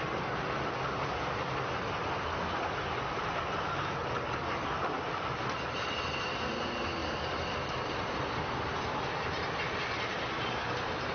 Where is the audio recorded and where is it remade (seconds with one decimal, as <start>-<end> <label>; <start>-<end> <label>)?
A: 0.0-11.1 recorded